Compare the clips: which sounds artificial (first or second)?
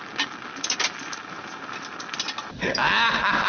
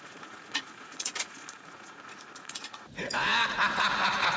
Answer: second